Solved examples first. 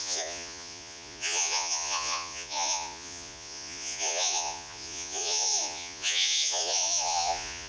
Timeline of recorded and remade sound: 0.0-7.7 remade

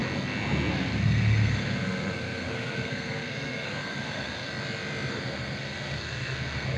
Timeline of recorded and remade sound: 0.0-0.7 recorded; 0.7-4.5 remade; 4.5-5.1 recorded; 5.1-6.8 remade

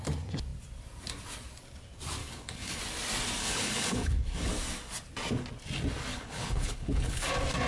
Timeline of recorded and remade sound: 0.0-2.2 recorded; 2.2-2.8 remade; 2.8-3.4 recorded; 3.4-4.5 remade; 4.5-6.1 recorded; 6.1-7.2 remade; 7.2-7.7 recorded

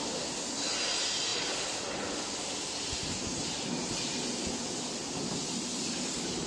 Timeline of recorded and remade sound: 0.0-6.5 recorded